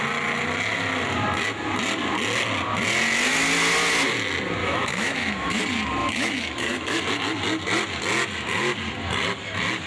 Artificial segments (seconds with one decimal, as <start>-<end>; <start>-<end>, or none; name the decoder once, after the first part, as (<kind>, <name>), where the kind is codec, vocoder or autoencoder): 4.6-5.6 (autoencoder, DAC-VAE); 6.0-7.0